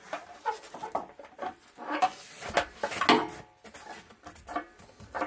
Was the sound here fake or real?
real